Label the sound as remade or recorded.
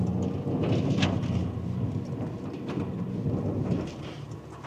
recorded